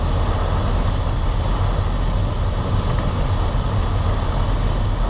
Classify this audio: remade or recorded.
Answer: recorded